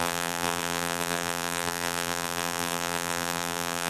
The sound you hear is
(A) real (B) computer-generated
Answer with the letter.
B